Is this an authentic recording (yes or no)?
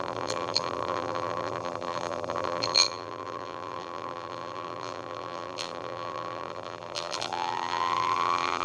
no